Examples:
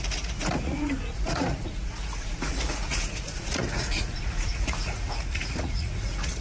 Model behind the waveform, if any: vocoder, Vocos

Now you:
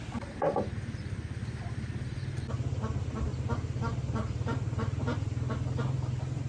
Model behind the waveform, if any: none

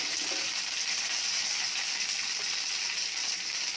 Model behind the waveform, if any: none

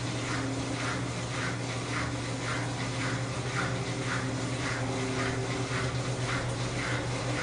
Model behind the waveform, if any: none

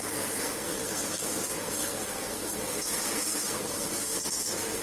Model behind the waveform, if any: codec, SNAC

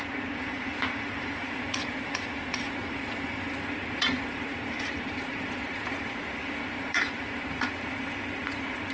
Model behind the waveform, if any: vocoder, Vocos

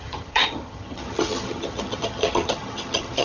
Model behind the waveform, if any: vocoder, HiFi-GAN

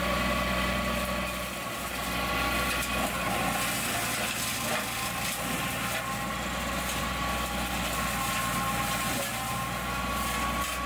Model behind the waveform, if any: none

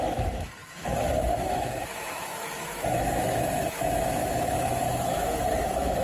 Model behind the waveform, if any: autoencoder, DAC-VAE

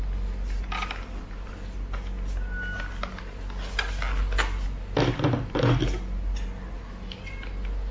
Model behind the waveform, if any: none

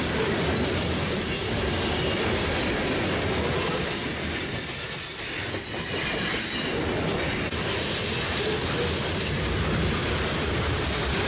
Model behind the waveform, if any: none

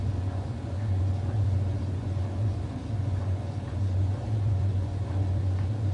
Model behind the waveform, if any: vocoder, Vocos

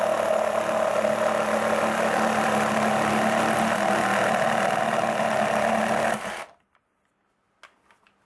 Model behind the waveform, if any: none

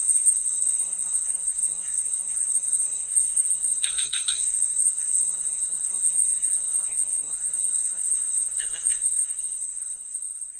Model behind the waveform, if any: codec, SNAC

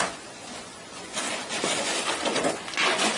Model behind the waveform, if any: vocoder, Vocos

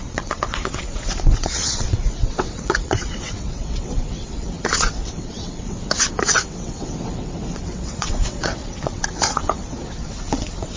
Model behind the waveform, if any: vocoder, WaveNeXt